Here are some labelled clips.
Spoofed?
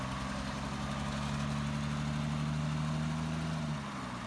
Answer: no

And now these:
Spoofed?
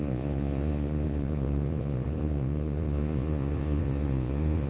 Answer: yes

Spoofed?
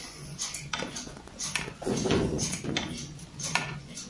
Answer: yes